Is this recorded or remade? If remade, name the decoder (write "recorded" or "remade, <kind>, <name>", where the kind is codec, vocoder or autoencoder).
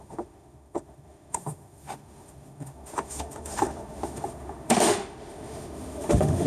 remade, autoencoder, DAC-VAE